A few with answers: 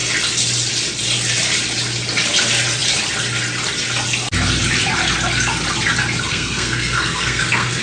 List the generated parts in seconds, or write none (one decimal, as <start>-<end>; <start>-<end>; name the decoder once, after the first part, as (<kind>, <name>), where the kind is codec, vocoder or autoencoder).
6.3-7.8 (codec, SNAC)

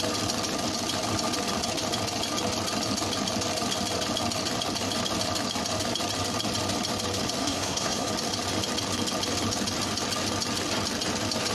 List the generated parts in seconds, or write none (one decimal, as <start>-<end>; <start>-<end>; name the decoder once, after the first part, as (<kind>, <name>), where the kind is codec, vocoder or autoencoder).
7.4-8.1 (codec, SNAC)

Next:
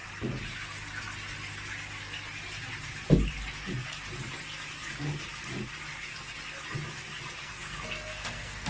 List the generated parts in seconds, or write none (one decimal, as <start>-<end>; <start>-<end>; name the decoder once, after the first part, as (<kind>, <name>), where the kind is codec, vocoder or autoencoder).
7.4-8.7 (codec, SNAC)